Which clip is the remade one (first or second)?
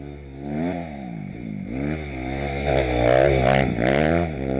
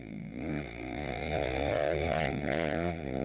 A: second